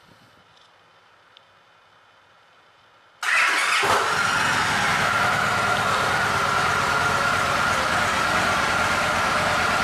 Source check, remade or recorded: recorded